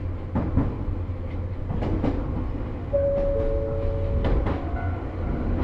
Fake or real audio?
real